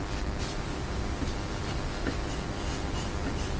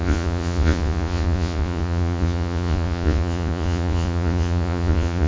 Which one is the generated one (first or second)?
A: second